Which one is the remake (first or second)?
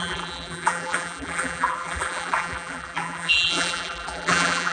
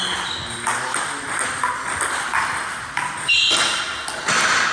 first